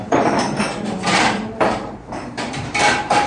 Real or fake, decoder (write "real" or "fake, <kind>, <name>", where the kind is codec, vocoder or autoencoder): fake, vocoder, BigVGAN v2